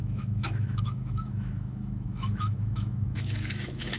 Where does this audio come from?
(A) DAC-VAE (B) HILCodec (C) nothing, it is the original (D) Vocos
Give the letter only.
A